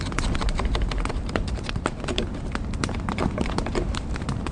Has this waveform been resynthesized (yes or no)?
yes